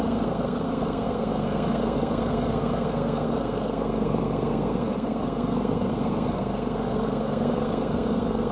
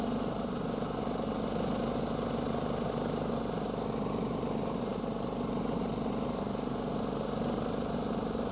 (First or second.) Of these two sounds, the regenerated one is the first